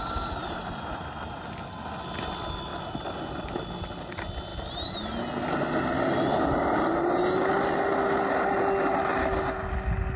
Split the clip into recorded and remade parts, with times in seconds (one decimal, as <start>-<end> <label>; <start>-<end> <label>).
0.0-10.2 recorded